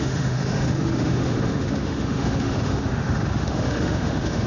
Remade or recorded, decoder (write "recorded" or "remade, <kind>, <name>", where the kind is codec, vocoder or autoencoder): remade, autoencoder, DAC-VAE